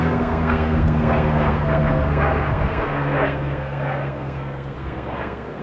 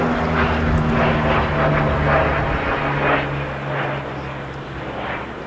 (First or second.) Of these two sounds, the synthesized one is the first